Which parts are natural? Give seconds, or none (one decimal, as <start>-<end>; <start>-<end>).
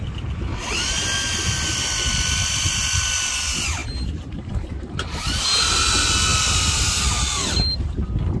0.0-8.4